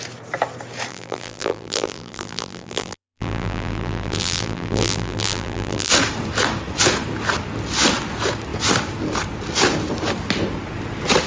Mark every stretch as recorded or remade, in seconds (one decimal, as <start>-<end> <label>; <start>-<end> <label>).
0.0-0.9 recorded; 0.9-5.9 remade; 5.9-11.3 recorded